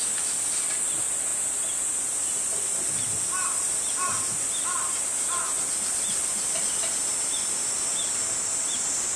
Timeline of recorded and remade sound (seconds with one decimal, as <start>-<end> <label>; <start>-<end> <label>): 0.0-9.2 recorded